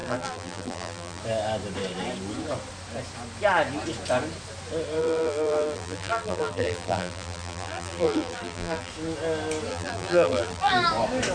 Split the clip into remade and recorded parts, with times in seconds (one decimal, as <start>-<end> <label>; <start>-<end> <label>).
0.0-1.2 remade; 1.2-5.0 recorded; 5.0-8.9 remade; 8.9-9.7 recorded; 9.7-10.7 remade; 10.7-11.3 recorded